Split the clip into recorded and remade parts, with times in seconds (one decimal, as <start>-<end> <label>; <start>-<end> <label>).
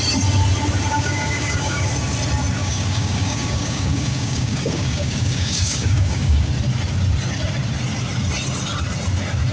0.0-0.9 recorded; 0.9-1.9 remade; 1.9-2.6 recorded; 2.6-6.5 remade; 6.5-9.5 recorded